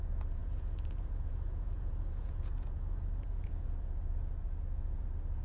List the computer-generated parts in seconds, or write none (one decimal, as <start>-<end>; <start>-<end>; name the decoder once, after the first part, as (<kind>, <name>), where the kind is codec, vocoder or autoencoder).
0.4-3.6 (vocoder, Vocos)